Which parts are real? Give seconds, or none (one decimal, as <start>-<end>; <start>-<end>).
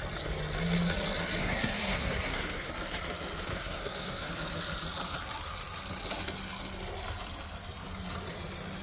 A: 0.0-1.4; 2.7-3.5; 4.3-8.8